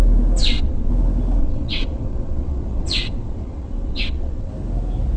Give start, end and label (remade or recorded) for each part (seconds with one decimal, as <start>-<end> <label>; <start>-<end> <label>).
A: 0.0-0.4 recorded; 0.4-0.9 remade; 0.9-1.4 recorded; 1.4-4.5 remade; 4.5-5.2 recorded